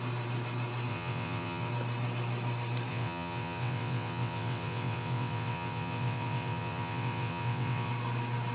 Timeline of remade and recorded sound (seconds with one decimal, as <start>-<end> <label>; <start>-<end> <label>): 0.0-0.9 recorded; 0.9-1.7 remade; 1.7-2.9 recorded; 2.9-7.9 remade; 7.9-8.5 recorded